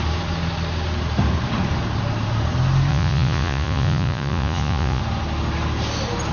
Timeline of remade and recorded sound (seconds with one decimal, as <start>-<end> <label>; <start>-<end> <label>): 0.0-2.9 recorded; 2.9-5.0 remade; 5.0-6.3 recorded